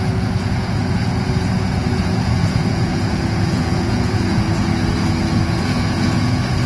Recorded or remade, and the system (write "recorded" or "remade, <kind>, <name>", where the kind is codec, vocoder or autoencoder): remade, vocoder, Vocos